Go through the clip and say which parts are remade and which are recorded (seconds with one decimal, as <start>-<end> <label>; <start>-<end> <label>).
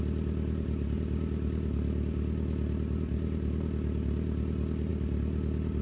0.0-5.8 recorded